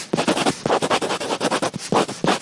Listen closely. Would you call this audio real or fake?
fake